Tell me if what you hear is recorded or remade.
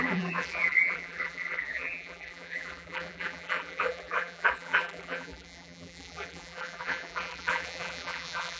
remade